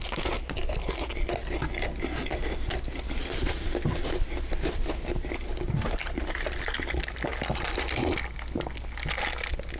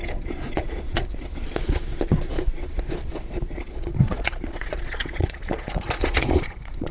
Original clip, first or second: first